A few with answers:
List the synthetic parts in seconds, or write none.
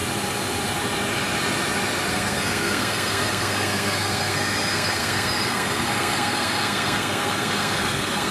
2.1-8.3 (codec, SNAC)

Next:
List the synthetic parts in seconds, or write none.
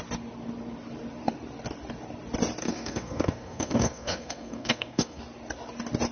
2.6-5.2 (codec, SNAC)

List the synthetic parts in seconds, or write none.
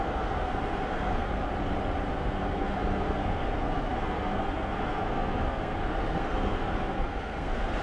0.0-1.4 (codec, SNAC); 2.1-7.8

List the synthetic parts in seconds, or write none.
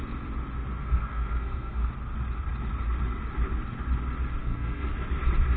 0.8-1.9 (codec, SNAC); 4.4-4.9